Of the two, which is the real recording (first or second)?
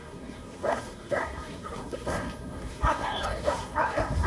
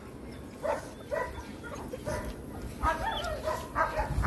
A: second